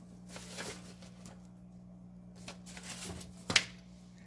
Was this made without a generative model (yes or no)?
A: yes